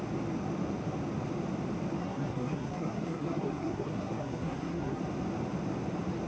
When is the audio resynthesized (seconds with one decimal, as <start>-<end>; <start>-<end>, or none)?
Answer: 2.0-5.0